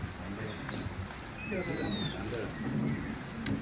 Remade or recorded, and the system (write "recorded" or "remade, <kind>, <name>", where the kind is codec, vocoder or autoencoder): recorded